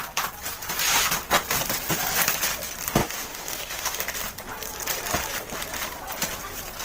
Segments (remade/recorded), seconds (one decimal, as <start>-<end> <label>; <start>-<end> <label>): 0.0-3.0 recorded; 3.0-4.0 remade; 4.0-6.8 recorded